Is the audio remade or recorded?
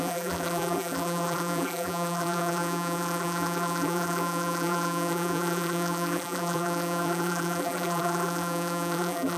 remade